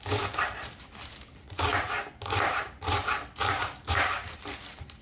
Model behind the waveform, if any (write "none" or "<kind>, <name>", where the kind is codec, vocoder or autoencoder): vocoder, BigVGAN v2